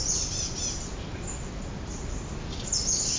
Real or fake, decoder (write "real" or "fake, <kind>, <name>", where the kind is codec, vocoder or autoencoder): real